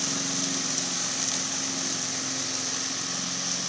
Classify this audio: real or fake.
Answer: real